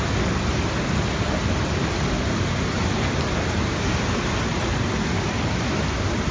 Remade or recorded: recorded